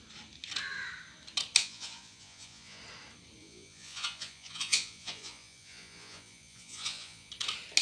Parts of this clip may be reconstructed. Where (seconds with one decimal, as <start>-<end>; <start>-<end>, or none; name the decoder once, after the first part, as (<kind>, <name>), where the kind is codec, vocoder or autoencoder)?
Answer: 1.6-2.8 (vocoder, Vocos); 3.4-7.3